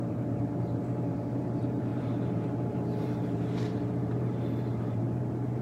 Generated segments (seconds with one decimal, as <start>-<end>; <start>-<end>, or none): 0.0-5.6